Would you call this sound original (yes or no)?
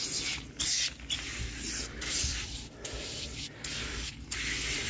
yes